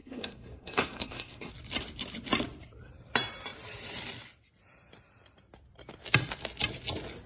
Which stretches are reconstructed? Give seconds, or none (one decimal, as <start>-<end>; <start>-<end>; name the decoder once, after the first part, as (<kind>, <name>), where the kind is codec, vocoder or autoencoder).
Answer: 0.0-1.5 (codec, SNAC)